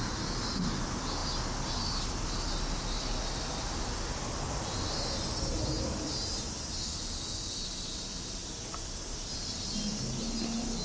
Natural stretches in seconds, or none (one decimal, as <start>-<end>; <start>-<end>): 0.0-10.8